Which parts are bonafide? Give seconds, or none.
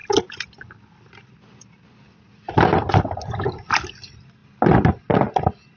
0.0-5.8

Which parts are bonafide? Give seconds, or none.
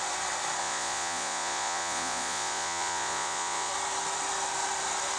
0.0-0.6; 3.7-5.2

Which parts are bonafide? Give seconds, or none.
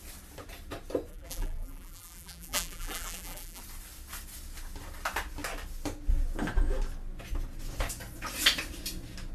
0.0-1.1; 3.6-9.3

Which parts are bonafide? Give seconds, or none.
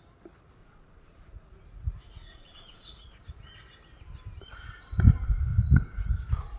0.0-0.6; 3.2-5.5; 6.1-6.6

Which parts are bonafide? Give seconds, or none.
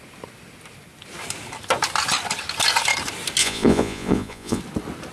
0.0-3.4; 4.6-5.1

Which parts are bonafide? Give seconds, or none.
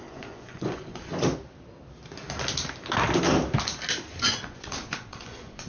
1.1-4.1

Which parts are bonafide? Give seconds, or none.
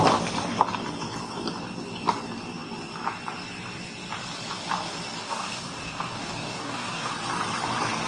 0.0-5.2; 7.1-8.1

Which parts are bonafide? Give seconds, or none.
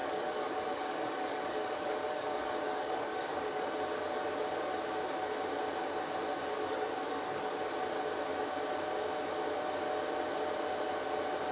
3.7-6.5; 7.6-11.5